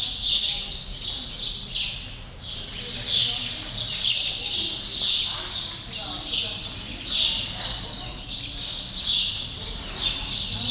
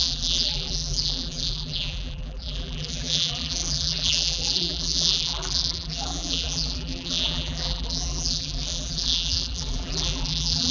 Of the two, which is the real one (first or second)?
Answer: first